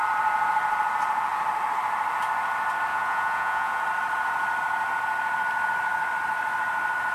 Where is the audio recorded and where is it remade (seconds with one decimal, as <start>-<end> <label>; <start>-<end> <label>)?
0.0-2.9 recorded; 2.9-3.8 remade; 3.8-7.1 recorded

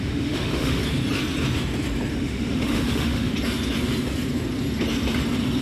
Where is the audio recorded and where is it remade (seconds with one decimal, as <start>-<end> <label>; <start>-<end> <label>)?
0.0-0.8 remade; 0.8-2.1 recorded; 2.1-3.3 remade; 3.3-5.6 recorded

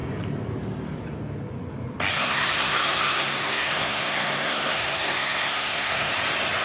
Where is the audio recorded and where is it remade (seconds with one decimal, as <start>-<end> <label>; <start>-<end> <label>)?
0.0-2.1 recorded; 2.1-6.1 remade; 6.1-6.6 recorded

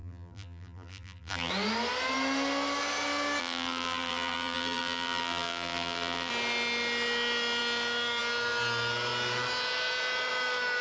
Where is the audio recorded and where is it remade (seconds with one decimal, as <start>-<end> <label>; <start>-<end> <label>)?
0.0-1.5 remade; 1.5-3.4 recorded; 3.4-6.3 remade; 6.3-10.8 recorded

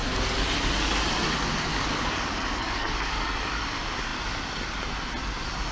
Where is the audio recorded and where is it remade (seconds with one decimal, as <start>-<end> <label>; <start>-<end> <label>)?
0.0-1.7 recorded; 1.7-3.2 remade; 3.2-5.7 recorded

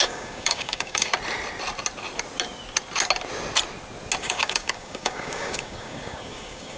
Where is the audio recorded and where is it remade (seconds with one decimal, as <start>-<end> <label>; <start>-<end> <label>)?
0.0-1.1 remade; 1.1-4.2 recorded; 4.2-6.8 remade

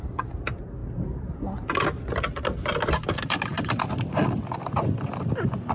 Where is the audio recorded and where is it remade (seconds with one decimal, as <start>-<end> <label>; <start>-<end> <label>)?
0.0-5.7 recorded